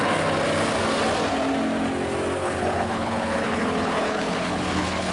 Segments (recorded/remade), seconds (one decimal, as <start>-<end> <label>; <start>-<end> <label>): 0.0-2.4 recorded; 2.4-5.1 remade